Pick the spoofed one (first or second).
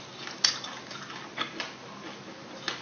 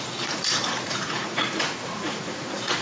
second